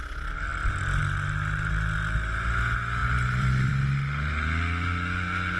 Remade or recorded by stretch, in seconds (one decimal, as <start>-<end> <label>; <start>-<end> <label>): 0.0-3.0 recorded; 3.0-3.7 remade; 3.7-5.6 recorded